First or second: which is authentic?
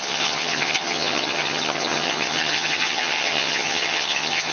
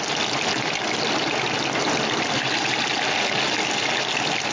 second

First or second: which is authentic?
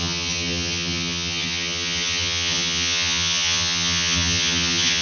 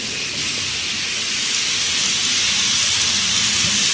second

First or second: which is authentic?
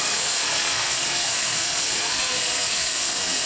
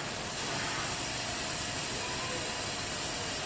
second